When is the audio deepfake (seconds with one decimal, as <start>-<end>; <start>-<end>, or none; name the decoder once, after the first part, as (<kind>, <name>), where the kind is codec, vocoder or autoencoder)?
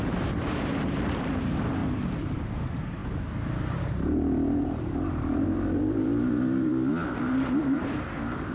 0.0-3.0 (vocoder, BigVGAN v2); 3.6-6.7; 7.3-8.5